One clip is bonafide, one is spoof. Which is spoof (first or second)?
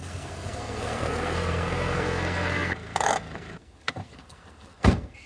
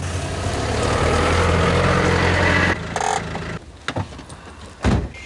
first